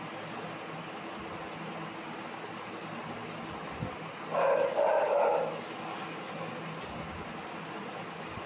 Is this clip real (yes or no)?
yes